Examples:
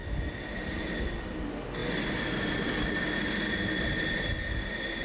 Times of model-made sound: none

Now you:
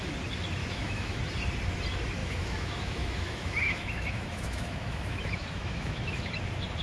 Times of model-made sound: 0.6-1.2 (autoencoder, DAC-VAE); 2.2-6.3

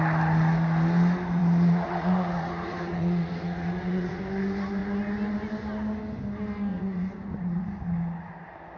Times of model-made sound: 1.4-4.2 (vocoder, Vocos); 6.7-7.6

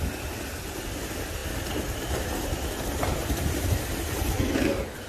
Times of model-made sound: none